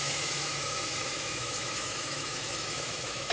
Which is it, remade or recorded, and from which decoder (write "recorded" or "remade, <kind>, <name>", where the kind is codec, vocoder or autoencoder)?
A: remade, autoencoder, DAC-VAE